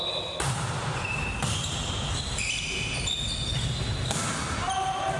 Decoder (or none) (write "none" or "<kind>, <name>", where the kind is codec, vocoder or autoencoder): none